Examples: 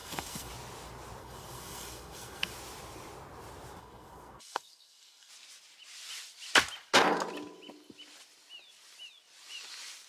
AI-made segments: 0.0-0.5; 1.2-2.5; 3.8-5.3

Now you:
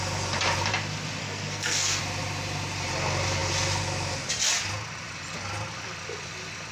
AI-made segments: 1.2-2.0

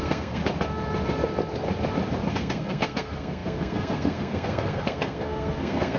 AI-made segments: 0.0-0.4; 2.3-6.0